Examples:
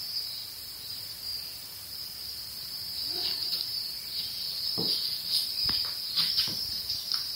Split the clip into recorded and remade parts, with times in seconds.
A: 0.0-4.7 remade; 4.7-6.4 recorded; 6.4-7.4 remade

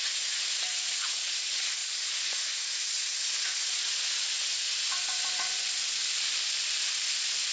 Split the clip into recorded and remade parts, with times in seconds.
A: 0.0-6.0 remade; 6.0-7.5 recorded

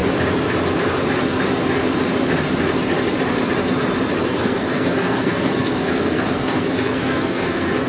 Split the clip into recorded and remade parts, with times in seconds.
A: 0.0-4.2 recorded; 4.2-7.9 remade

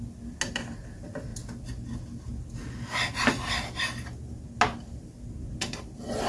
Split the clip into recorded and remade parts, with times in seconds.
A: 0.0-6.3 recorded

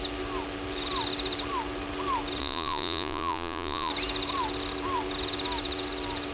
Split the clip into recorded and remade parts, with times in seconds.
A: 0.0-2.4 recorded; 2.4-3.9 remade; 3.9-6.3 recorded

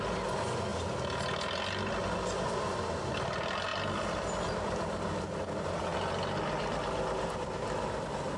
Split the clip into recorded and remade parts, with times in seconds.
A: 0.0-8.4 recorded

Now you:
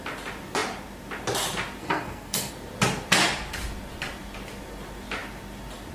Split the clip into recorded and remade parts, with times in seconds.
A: 0.0-1.8 recorded; 1.8-2.5 remade; 2.5-5.9 recorded